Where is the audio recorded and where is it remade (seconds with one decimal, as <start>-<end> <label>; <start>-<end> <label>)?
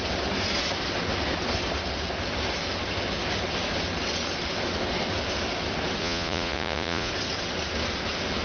0.0-6.0 recorded; 6.0-7.1 remade; 7.1-8.4 recorded